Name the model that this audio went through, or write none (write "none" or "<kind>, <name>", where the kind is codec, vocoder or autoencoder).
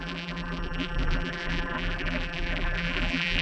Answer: vocoder, BigVGAN v2